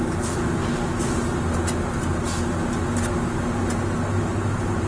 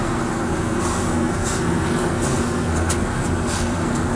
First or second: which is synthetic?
second